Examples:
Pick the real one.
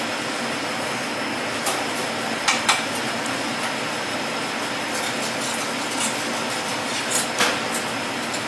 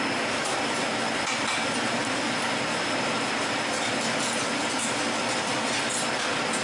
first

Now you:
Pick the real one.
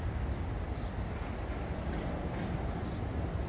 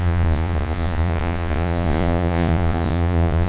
first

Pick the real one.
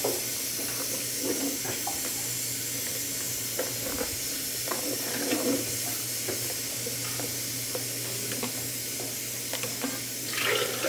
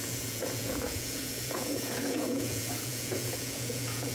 first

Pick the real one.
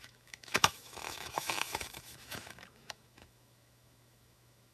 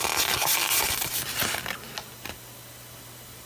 second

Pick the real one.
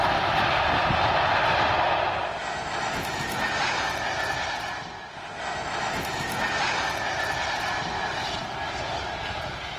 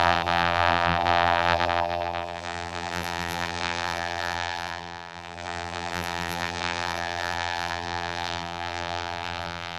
first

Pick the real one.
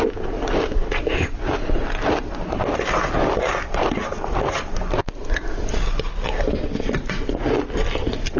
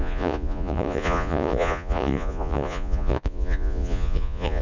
first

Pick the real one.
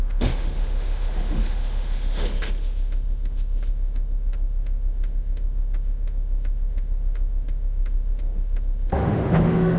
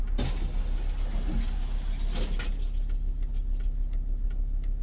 second